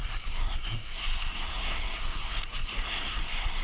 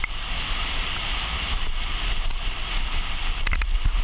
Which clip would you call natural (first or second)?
second